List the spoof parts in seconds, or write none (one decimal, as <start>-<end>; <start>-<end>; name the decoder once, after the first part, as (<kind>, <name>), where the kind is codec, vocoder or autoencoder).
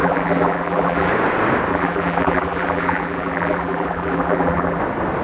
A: 0.0-1.1 (vocoder, BigVGAN v2); 1.7-4.8